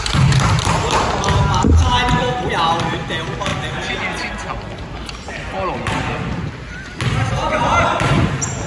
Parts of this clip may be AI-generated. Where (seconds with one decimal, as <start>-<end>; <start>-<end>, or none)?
none